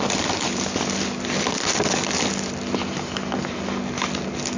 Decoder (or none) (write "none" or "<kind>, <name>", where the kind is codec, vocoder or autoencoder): none